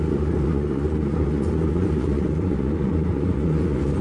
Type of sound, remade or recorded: remade